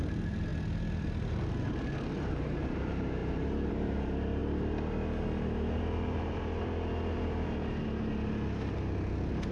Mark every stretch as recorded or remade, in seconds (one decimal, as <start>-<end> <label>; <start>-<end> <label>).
0.0-0.5 remade; 0.5-1.3 recorded; 1.3-4.4 remade; 4.4-9.5 recorded